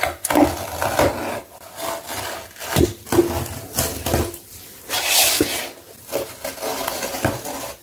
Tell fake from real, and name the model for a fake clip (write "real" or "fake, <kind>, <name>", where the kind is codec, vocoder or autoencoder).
real